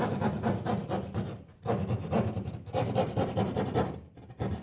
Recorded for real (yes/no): yes